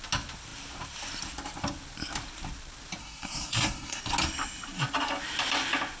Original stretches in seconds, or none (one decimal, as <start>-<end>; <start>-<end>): 0.0-3.0; 4.0-6.0